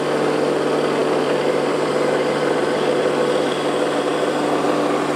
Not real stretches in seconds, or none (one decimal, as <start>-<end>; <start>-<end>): 1.0-4.1